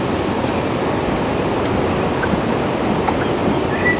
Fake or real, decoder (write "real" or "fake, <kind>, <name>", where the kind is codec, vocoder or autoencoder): real